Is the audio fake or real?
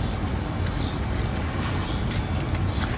real